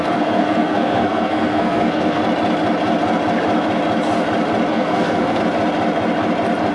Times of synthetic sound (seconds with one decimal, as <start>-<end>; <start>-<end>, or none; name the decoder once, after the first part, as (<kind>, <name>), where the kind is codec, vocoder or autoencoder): 0.0-2.2 (codec, SNAC); 4.7-5.4